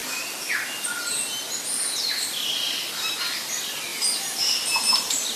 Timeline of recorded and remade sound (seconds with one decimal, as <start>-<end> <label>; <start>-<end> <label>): 0.0-3.9 recorded; 3.9-5.4 remade